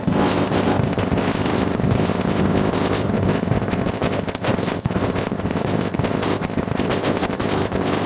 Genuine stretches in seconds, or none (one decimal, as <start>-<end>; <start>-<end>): none